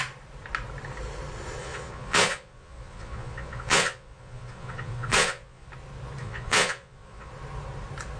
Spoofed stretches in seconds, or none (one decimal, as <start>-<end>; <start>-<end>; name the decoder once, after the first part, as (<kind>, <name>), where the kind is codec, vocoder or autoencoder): 1.6-5.7 (vocoder, Vocos); 6.2-7.3